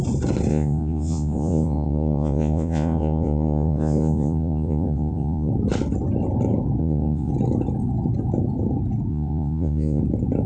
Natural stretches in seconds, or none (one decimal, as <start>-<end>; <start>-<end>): 0.0-0.5; 5.5-6.8; 7.3-9.1; 10.0-10.5